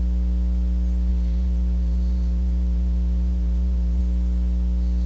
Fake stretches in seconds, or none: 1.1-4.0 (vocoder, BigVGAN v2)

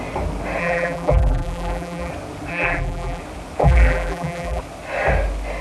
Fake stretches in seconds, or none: 0.6-2.1 (vocoder, BigVGAN v2); 2.5-3.2; 3.6-4.6

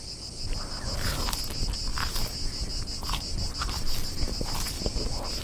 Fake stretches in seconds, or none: none